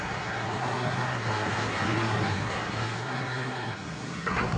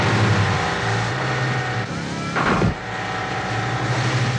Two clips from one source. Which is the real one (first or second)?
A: second